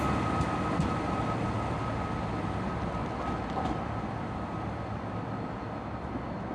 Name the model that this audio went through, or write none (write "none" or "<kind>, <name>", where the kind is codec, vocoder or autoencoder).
none